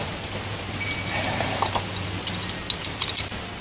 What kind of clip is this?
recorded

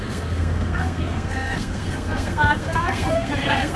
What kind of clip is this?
remade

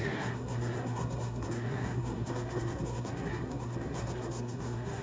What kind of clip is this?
remade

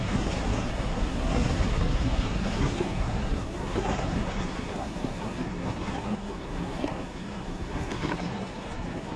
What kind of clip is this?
remade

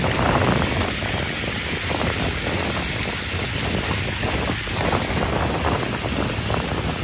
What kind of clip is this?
recorded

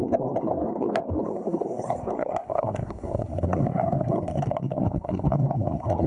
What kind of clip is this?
remade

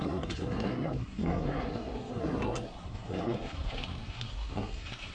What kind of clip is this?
remade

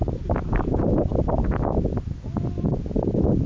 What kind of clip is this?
recorded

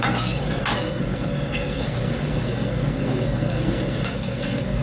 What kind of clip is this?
remade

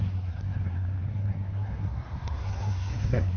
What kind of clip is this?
remade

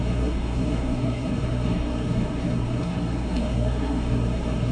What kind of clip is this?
remade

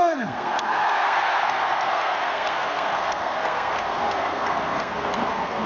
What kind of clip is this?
remade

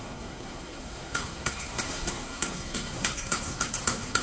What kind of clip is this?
remade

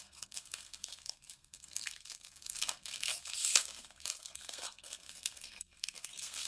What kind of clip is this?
remade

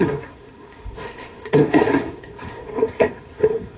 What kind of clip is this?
remade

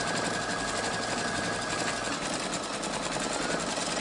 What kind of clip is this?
recorded